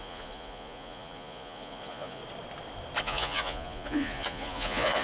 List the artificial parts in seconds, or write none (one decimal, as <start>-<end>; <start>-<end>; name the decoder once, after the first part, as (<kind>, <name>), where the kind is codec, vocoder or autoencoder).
0.0-2.2 (vocoder, Vocos); 3.0-5.0